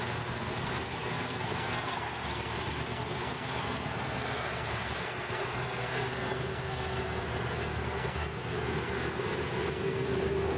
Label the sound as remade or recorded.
remade